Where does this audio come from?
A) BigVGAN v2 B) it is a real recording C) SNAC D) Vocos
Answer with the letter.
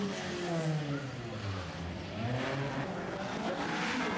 B